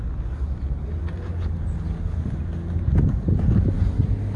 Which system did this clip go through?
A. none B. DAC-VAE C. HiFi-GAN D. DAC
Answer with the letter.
A